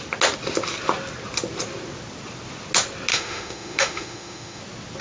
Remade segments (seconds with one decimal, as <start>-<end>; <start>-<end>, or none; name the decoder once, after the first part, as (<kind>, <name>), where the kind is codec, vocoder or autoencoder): 3.1-4.6 (autoencoder, DAC-VAE)